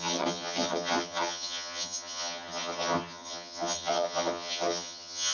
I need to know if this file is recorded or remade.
remade